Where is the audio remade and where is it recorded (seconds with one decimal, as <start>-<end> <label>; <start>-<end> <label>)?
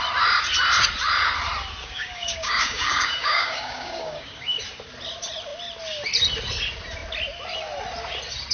0.0-1.8 recorded; 1.8-4.6 remade; 4.6-8.5 recorded